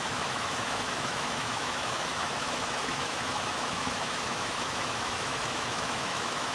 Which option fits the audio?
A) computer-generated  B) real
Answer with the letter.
A